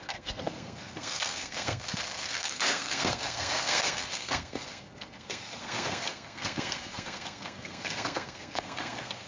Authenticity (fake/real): fake